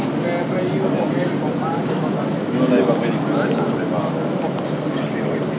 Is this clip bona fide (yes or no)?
yes